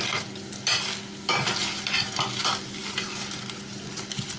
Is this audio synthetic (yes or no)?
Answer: no